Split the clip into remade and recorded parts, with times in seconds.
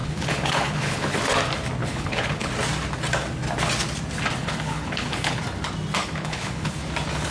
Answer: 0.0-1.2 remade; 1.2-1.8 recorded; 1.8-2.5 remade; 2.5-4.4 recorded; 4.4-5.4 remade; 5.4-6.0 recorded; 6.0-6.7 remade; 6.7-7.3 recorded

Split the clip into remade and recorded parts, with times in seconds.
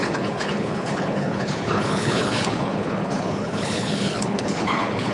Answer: 0.0-5.1 remade